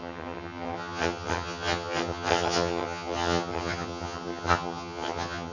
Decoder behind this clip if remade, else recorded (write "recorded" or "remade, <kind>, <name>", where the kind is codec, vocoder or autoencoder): remade, vocoder, HiFi-GAN